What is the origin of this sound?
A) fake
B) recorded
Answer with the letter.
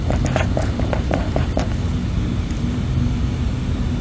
B